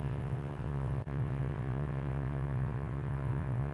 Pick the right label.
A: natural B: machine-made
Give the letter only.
B